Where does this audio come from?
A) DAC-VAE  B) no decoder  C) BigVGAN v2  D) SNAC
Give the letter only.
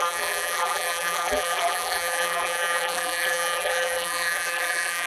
C